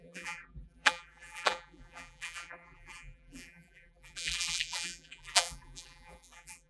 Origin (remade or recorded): remade